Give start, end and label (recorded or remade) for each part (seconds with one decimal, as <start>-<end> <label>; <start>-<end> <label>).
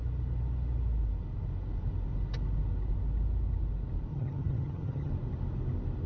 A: 0.0-4.1 recorded; 4.1-5.1 remade; 5.1-6.1 recorded